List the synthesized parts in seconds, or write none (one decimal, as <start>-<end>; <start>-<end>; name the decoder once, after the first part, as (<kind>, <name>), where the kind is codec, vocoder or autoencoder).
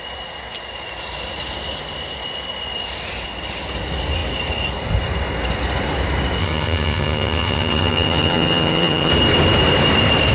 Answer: 6.4-9.1 (vocoder, HiFi-GAN)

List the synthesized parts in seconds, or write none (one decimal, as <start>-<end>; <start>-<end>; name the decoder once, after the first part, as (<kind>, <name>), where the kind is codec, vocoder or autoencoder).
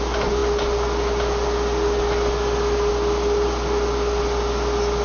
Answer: none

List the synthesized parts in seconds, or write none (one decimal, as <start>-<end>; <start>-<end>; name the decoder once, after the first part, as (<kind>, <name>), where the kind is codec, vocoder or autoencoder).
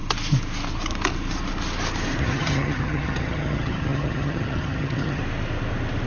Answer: 2.2-5.2 (vocoder, HiFi-GAN)